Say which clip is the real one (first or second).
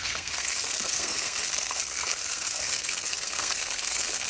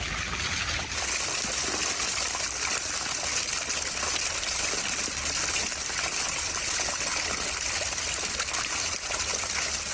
second